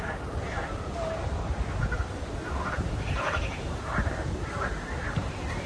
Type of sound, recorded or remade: recorded